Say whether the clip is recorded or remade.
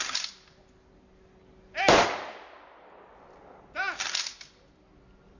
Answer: recorded